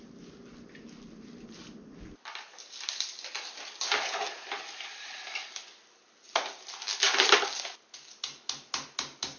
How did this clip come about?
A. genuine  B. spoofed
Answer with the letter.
A